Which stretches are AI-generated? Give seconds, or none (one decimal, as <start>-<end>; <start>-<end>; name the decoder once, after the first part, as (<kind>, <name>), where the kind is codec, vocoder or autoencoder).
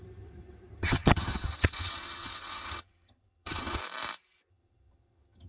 0.0-3.8 (vocoder, HiFi-GAN); 4.5-5.5